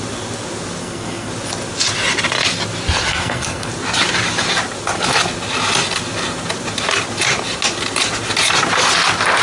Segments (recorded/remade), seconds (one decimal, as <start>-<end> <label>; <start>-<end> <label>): 0.0-0.8 recorded; 0.8-1.3 remade; 1.3-3.1 recorded; 3.1-3.7 remade; 3.7-9.4 recorded